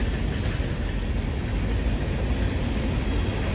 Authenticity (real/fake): real